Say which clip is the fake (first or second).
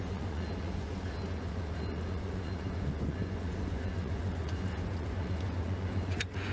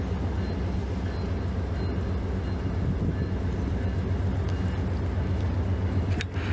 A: first